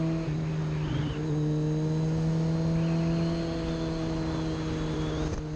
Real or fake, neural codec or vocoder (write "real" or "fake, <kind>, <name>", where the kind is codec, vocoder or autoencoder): real